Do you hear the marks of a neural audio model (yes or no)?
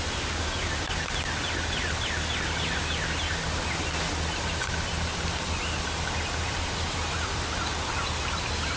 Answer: no